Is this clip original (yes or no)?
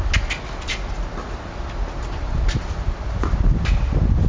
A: yes